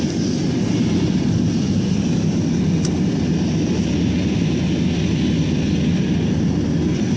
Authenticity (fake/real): real